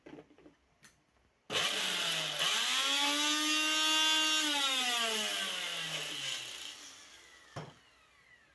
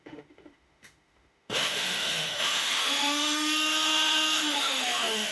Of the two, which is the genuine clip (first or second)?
first